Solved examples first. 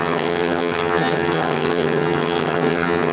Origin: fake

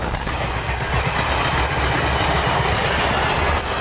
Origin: real